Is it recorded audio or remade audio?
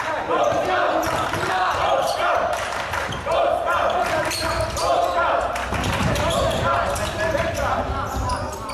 remade